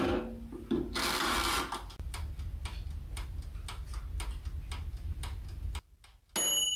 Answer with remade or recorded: recorded